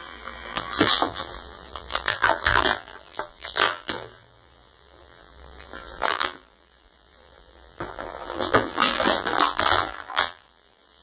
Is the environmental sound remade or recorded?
remade